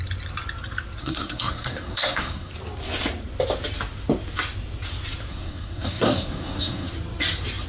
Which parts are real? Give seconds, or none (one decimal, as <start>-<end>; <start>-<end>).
0.0-1.0; 2.5-5.3; 6.9-7.7